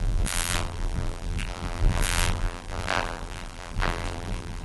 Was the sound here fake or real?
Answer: fake